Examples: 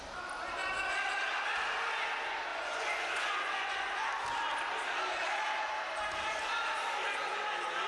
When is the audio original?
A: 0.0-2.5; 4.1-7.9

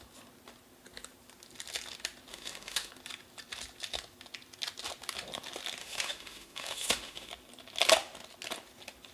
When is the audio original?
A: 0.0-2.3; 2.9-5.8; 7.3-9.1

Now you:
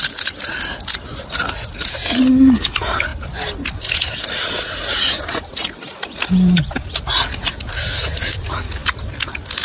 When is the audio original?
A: 0.0-9.6

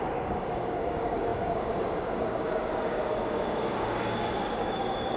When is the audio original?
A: none

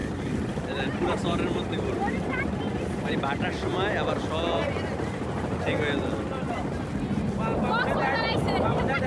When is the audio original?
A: 3.7-7.8

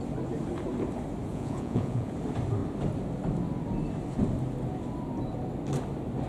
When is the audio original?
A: 0.0-1.3; 2.1-6.3